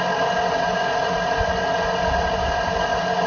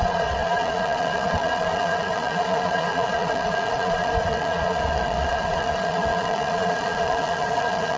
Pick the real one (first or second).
first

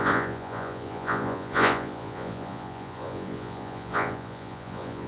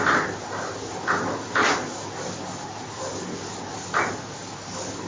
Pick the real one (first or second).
second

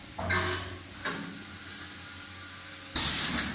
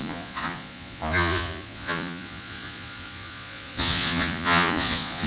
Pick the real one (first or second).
first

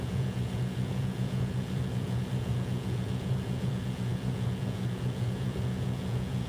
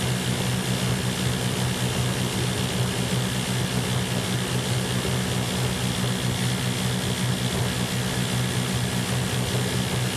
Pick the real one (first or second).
second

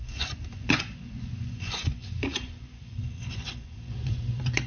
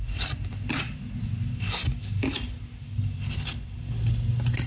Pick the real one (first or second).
second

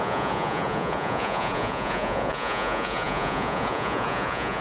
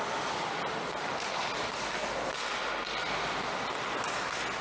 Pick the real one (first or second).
second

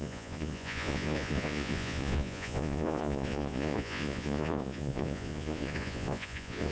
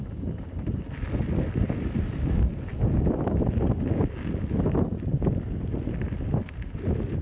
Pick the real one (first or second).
second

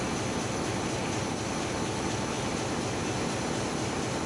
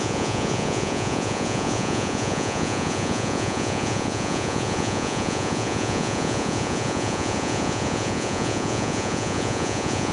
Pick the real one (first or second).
first